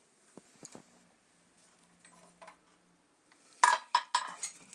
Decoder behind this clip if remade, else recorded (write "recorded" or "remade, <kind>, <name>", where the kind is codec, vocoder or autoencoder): recorded